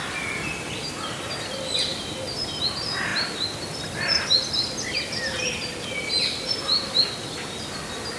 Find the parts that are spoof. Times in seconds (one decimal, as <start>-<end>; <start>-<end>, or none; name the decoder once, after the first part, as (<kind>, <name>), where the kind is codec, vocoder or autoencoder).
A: none